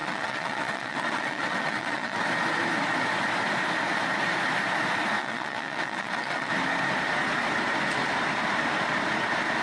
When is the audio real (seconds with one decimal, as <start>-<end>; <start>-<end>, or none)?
2.2-5.2; 6.5-9.6

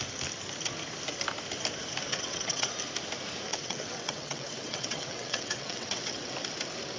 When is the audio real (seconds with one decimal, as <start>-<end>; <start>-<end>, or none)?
0.0-2.1; 2.7-3.5; 6.3-7.0

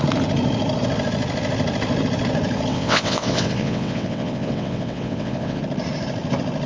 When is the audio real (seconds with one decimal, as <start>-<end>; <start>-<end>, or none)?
0.0-2.7; 5.6-6.7

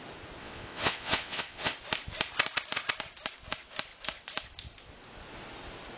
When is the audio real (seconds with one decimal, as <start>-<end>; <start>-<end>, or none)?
0.0-0.4; 1.7-6.0

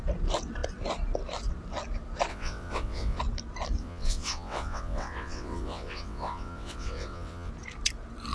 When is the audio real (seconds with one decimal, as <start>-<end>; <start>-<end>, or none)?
0.0-2.3; 3.2-3.8; 7.5-8.3